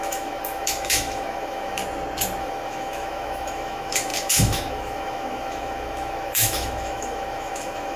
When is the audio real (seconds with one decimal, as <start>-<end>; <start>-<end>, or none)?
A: 1.8-2.4